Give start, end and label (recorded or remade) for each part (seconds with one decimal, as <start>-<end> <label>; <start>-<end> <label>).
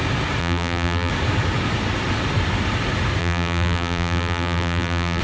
0.0-0.4 recorded; 0.4-1.1 remade; 1.1-3.2 recorded; 3.2-5.2 remade